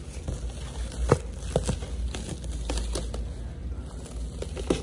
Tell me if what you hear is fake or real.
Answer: real